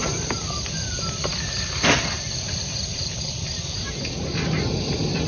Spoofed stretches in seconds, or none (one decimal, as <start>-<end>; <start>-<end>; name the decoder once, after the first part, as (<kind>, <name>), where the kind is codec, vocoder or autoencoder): 1.3-3.9 (vocoder, BigVGAN v2)